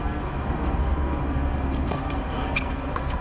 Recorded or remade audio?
remade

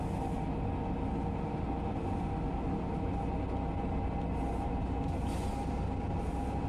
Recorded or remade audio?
recorded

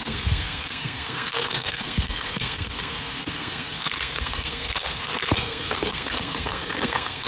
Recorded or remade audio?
remade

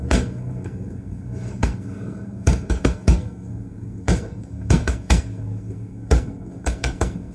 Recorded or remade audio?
remade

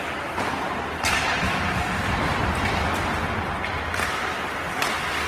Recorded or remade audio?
recorded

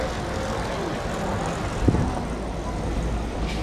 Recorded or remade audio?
recorded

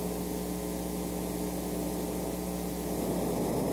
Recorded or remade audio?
recorded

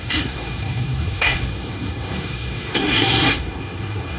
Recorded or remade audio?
remade